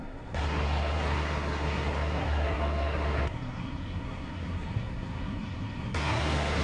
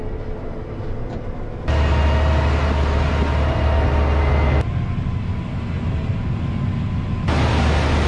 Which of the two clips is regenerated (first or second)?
first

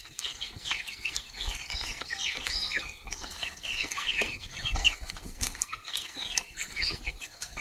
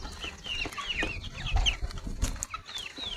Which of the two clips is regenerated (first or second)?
first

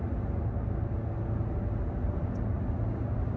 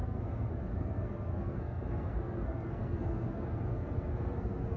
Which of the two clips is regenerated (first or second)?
second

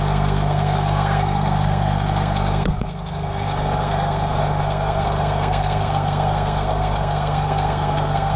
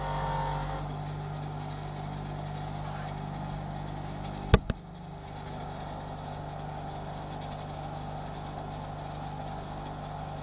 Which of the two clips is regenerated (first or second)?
first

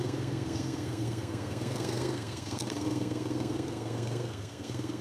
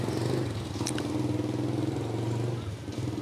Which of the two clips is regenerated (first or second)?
first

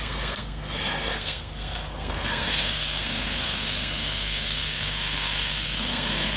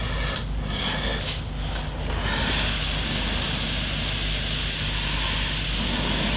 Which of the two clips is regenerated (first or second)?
first